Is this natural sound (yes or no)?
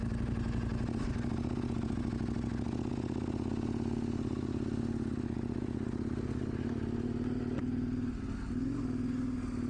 yes